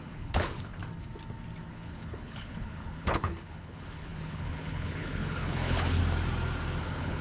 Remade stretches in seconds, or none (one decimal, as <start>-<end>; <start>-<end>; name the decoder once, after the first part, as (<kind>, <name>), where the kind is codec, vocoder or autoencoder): 0.0-0.8 (codec, HILCodec); 1.7-6.0; 6.8-7.2